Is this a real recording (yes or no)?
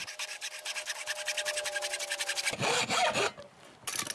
yes